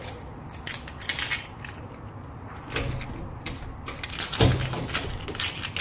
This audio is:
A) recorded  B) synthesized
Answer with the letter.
A